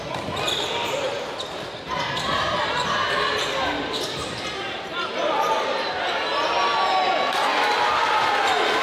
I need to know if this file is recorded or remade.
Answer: recorded